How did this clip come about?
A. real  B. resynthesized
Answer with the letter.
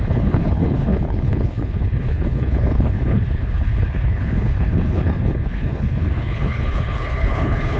B